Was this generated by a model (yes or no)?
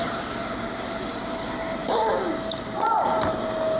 no